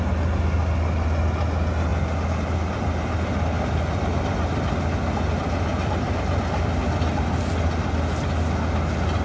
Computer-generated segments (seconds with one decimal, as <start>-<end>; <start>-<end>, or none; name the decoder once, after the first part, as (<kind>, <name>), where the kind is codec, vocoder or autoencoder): none